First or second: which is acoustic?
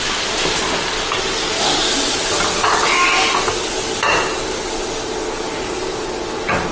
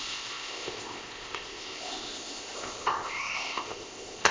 first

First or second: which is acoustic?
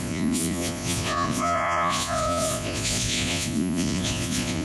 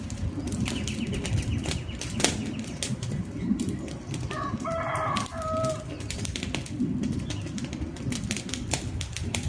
second